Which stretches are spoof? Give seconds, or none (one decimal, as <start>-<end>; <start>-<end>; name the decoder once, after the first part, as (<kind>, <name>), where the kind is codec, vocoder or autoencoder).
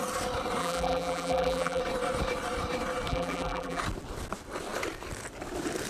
0.6-1.8 (vocoder, BigVGAN v2); 3.1-3.8